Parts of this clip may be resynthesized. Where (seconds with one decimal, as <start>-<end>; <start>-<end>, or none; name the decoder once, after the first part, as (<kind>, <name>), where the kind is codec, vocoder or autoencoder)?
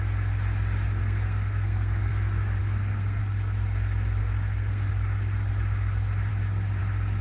1.0-2.1 (codec, SNAC); 2.6-3.2; 4.2-4.9